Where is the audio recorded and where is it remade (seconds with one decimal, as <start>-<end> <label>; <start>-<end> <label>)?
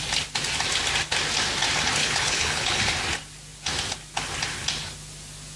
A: 0.0-2.0 recorded; 2.0-2.8 remade; 2.8-5.6 recorded